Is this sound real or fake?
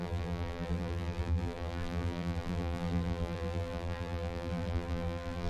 fake